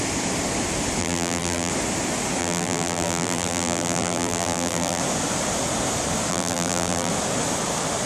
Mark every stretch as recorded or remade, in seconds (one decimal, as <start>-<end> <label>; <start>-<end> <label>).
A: 0.0-1.0 recorded; 1.0-1.7 remade; 1.7-2.4 recorded; 2.4-5.0 remade; 5.0-6.3 recorded; 6.3-7.1 remade; 7.1-8.1 recorded